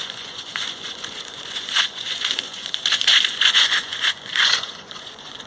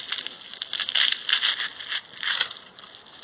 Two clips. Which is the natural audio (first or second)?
second